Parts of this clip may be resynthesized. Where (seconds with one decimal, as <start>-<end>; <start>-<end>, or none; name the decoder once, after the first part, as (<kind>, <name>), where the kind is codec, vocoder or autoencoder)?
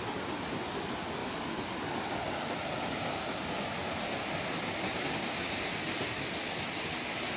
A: none